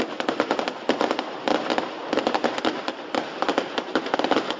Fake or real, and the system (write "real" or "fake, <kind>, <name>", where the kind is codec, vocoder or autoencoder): real